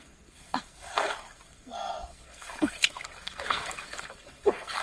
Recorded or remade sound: remade